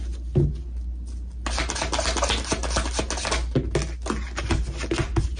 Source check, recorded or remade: recorded